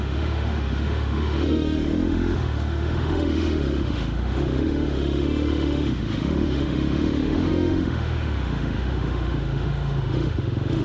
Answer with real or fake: fake